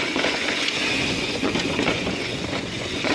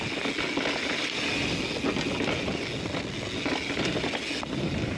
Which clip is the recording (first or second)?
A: second